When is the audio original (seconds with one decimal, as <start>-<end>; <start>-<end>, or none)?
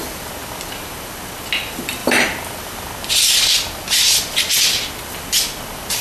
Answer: 0.0-6.0